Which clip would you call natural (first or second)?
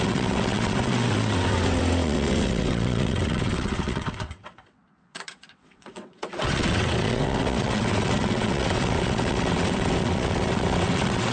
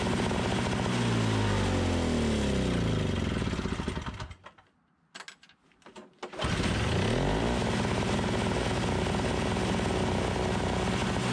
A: second